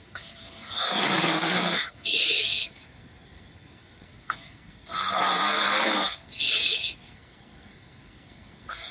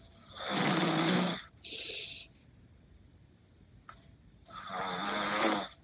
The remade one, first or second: first